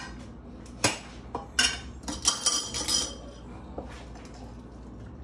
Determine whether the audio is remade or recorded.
recorded